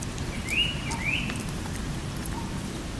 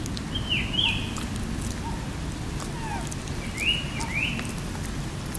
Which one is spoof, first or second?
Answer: first